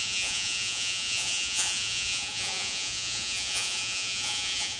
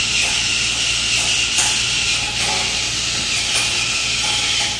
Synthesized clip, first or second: first